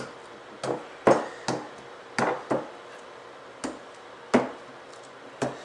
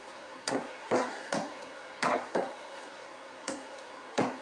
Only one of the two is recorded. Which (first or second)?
first